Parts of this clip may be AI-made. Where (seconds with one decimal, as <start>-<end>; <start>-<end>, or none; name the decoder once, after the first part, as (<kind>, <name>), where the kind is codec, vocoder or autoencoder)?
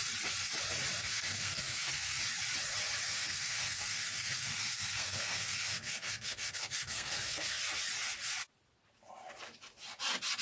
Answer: 1.0-2.2 (codec, SNAC); 3.0-7.6